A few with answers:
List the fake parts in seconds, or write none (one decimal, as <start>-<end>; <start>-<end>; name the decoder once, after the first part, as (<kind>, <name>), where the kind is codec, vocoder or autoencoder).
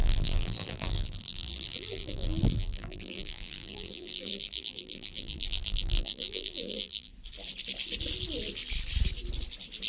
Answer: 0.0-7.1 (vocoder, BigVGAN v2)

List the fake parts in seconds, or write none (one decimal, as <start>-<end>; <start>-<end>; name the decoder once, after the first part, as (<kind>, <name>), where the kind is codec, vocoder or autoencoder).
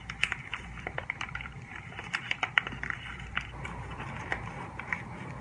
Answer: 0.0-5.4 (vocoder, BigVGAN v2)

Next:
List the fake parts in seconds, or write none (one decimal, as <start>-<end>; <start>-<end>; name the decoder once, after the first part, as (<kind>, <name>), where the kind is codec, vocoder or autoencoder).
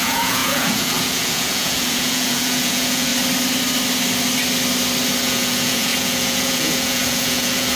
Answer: 0.0-3.1 (vocoder, Vocos); 5.2-7.8